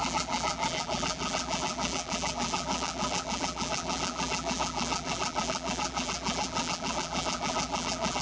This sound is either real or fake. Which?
fake